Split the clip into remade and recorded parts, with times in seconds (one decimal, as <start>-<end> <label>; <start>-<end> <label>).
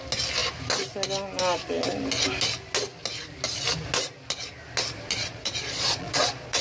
0.0-5.2 recorded; 5.2-6.6 remade